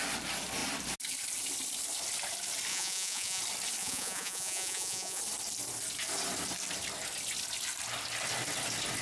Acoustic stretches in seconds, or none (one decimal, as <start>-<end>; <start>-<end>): 0.0-2.7; 3.4-3.8; 5.2-9.0